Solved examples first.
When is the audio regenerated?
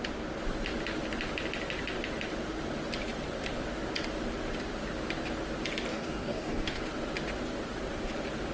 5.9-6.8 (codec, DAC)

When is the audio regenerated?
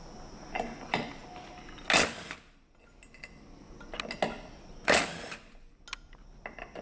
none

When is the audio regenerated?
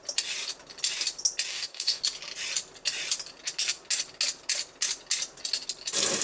1.5-2.0 (codec, DAC)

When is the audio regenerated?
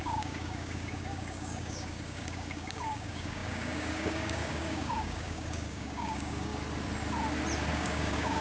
0.0-6.5 (codec, DAC); 7.7-8.4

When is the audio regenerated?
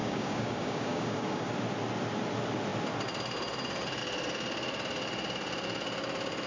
0.0-1.5 (codec, DAC)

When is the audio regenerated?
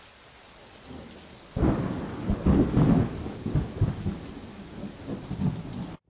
1.3-5.0 (codec, DAC)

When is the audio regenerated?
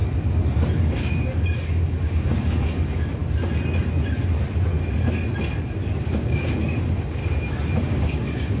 0.8-3.2 (codec, DAC); 6.0-7.2; 7.9-8.6